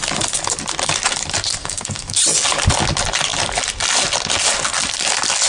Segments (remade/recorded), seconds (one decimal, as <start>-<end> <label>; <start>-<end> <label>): 0.0-1.6 recorded; 1.6-2.2 remade; 2.2-5.5 recorded